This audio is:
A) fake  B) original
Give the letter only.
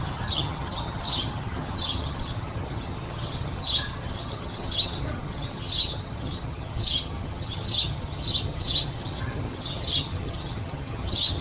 A